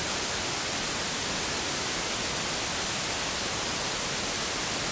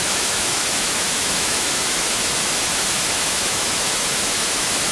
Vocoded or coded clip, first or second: second